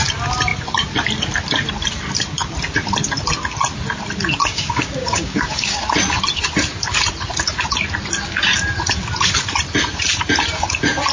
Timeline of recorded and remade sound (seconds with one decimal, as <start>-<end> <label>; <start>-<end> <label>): 0.0-4.4 recorded; 4.4-5.8 remade; 5.8-11.1 recorded